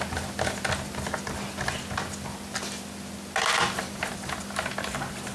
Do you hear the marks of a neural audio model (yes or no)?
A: no